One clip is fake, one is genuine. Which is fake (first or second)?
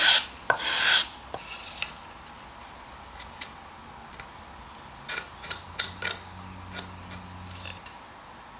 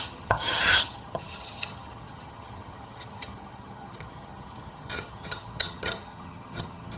second